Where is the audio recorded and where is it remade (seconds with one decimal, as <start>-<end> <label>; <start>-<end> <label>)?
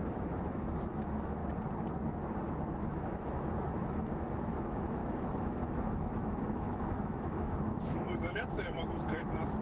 0.0-1.4 remade; 1.4-2.8 recorded; 2.8-9.6 remade